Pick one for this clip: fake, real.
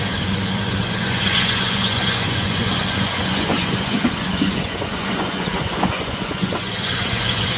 fake